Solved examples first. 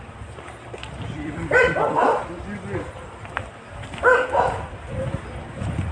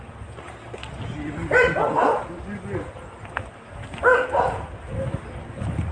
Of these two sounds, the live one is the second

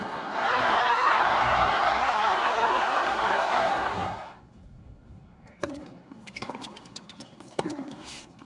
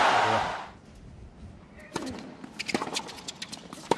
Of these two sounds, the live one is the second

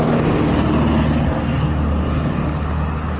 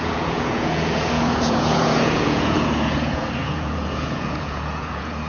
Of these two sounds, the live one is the first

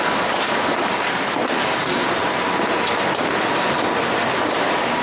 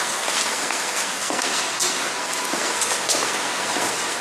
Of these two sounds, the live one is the first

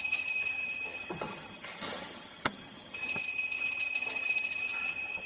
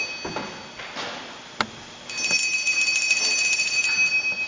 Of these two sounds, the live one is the second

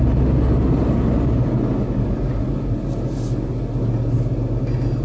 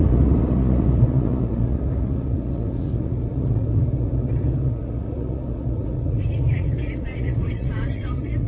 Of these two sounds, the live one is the first